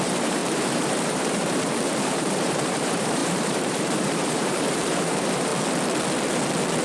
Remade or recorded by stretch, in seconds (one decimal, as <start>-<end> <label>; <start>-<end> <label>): 0.0-5.5 remade; 5.5-6.8 recorded